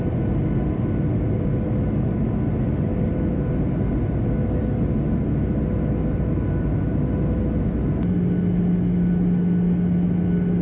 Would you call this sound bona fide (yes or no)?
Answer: yes